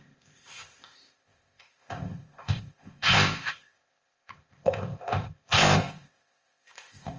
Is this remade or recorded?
remade